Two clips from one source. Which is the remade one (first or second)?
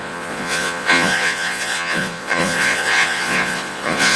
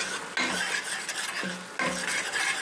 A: first